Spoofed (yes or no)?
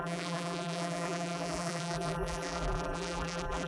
yes